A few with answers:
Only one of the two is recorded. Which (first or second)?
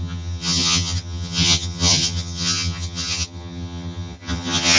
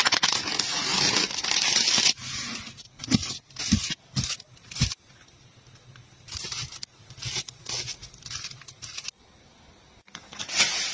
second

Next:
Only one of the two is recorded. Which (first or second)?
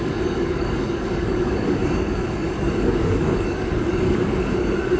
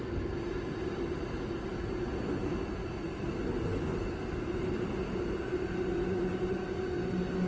second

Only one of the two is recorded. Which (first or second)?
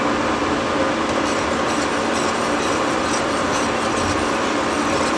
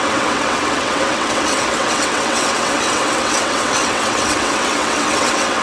first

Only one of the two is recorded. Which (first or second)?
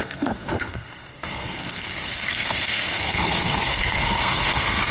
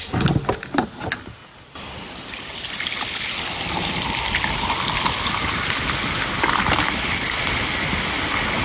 second